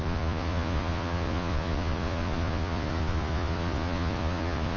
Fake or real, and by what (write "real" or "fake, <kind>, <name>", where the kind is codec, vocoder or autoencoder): fake, vocoder, Vocos